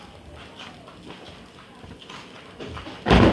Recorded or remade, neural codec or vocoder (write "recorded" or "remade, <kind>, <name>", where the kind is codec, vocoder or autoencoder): recorded